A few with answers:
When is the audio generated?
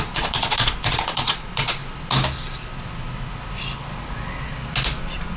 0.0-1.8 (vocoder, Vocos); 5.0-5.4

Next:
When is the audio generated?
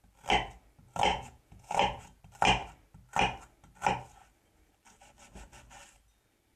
1.1-2.2 (vocoder, Vocos)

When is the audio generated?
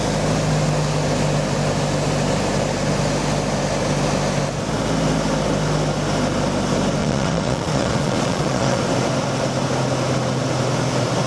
7.0-8.8 (vocoder, Vocos)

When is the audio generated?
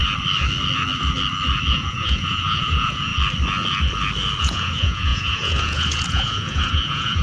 1.7-3.1 (vocoder, Vocos); 4.4-7.2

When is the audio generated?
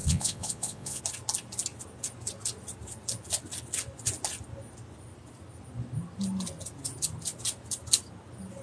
0.0-1.0 (vocoder, Vocos)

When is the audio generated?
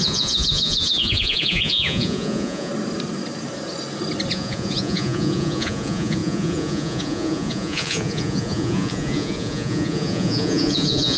0.0-2.7 (vocoder, Vocos); 4.3-11.2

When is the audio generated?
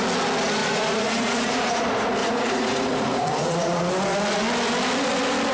0.6-1.8 (vocoder, Vocos); 2.2-3.9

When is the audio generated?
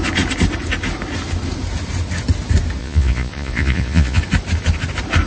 2.8-4.2 (vocoder, Vocos)